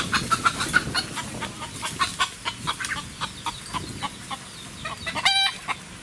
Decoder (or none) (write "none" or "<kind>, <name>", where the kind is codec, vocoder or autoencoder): none